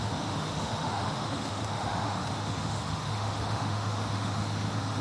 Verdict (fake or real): fake